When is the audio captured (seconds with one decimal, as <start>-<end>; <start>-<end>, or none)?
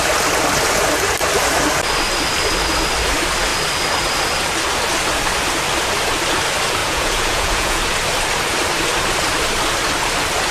0.0-6.8; 7.8-10.5